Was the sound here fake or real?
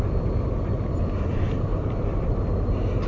real